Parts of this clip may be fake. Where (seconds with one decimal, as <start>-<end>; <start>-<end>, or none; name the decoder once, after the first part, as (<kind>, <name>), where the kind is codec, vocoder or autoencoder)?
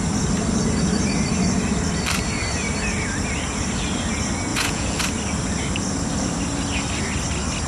4.5-5.0 (vocoder, Vocos)